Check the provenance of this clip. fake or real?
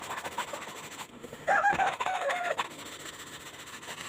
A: fake